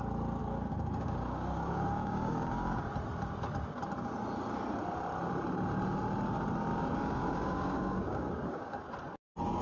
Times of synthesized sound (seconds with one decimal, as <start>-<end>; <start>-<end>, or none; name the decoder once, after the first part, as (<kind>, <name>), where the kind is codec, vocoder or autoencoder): 0.4-2.8 (codec, DAC); 6.7-8.8